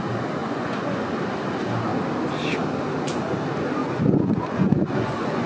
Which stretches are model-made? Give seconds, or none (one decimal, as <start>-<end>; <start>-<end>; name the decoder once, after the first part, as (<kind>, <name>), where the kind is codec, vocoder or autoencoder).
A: 0.4-1.1 (vocoder, Vocos); 3.8-5.5